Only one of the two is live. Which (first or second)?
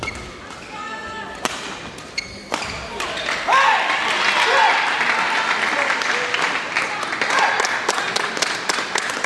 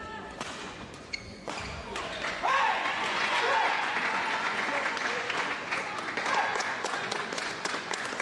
first